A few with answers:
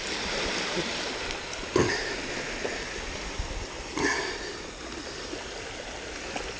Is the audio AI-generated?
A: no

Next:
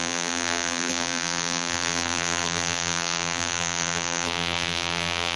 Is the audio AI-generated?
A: yes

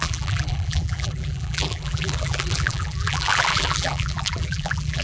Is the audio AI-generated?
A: yes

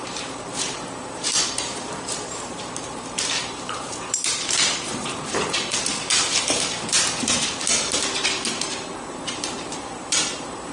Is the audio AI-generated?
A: yes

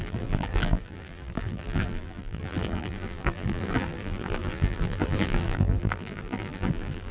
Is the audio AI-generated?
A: yes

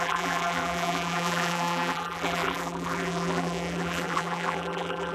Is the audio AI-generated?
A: yes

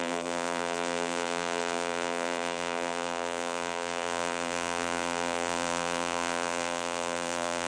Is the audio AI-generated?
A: yes